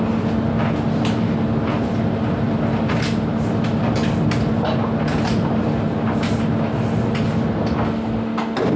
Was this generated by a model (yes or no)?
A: no